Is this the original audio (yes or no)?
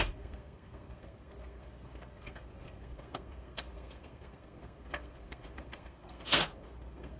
no